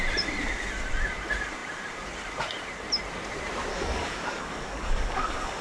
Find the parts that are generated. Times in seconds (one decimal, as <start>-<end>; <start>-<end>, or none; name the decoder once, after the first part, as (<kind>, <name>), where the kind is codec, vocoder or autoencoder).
3.7-5.6 (codec, DAC)